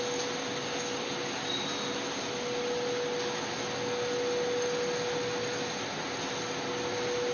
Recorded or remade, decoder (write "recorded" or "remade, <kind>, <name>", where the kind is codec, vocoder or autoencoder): recorded